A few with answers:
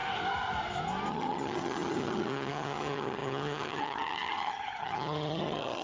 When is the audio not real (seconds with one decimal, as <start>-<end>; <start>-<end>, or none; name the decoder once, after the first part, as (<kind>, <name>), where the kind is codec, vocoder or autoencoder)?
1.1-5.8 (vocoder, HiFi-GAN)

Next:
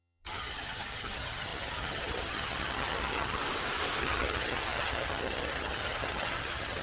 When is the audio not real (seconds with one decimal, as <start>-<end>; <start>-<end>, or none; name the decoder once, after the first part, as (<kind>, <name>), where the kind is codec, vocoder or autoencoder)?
0.0-3.4 (vocoder, HiFi-GAN); 4.0-6.8

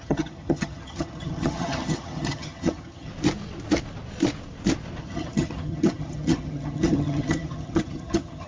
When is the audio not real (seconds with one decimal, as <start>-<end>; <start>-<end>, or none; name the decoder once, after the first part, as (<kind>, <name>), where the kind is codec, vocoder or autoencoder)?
0.0-3.1 (vocoder, HiFi-GAN); 5.0-8.5